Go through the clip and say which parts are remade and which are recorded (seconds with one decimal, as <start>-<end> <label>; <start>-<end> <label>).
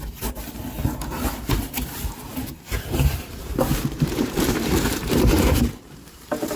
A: 0.0-2.3 recorded; 2.3-6.6 remade